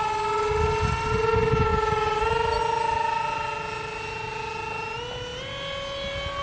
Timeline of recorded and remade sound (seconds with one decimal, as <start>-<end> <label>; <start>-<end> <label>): 0.0-6.4 recorded